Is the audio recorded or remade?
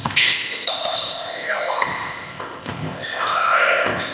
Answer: remade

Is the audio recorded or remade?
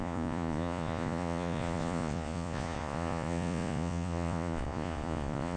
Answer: remade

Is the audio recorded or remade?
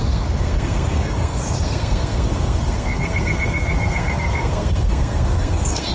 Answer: remade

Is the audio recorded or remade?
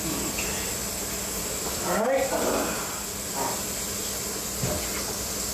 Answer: recorded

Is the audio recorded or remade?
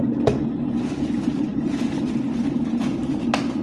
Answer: recorded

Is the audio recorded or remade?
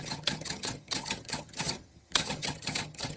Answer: remade